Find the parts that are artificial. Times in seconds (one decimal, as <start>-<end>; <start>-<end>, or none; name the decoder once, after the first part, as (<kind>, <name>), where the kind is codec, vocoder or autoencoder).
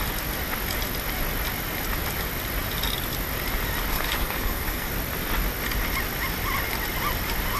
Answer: 3.9-4.9 (codec, SNAC)